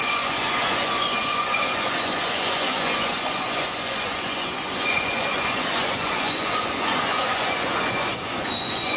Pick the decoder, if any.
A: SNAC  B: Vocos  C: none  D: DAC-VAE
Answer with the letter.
B